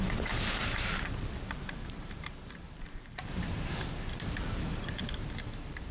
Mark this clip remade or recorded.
remade